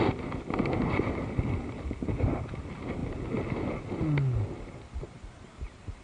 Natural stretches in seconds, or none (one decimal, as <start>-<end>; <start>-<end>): 0.0-6.0